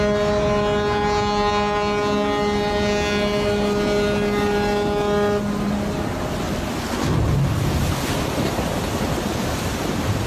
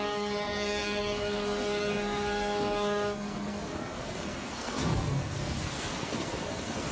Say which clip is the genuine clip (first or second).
first